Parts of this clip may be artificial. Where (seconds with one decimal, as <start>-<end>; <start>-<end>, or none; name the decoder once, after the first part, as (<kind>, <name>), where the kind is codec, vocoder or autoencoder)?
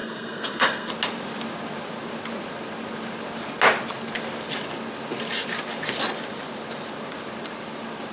0.0-0.9 (codec, SNAC)